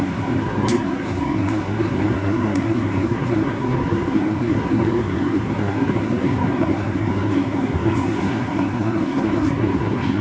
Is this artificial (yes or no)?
yes